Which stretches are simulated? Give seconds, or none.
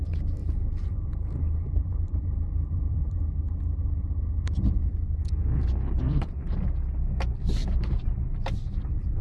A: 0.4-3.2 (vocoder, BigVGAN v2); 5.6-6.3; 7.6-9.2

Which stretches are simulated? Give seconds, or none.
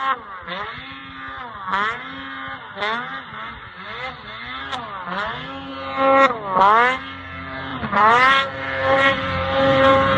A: 7.7-10.2 (vocoder, BigVGAN v2)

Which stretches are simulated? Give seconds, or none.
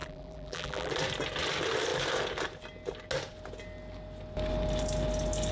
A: 0.0-0.9 (vocoder, BigVGAN v2)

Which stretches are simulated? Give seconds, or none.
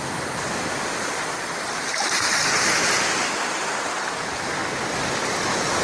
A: 0.0-4.6 (vocoder, BigVGAN v2)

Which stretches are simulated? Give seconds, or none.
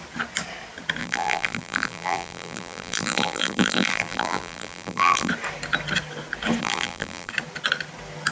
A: 1.0-5.3 (vocoder, BigVGAN v2); 6.6-7.3